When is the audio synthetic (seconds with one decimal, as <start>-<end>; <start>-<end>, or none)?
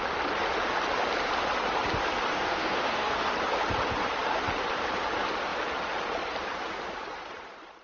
2.3-3.3